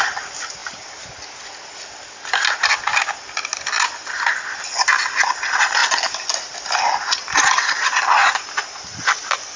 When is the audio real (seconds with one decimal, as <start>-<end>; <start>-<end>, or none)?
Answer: 0.0-9.6